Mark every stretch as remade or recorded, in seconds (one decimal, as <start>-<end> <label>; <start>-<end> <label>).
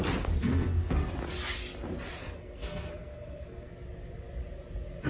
0.0-0.4 recorded; 0.4-1.1 remade; 1.1-2.2 recorded; 2.2-3.7 remade; 3.7-5.1 recorded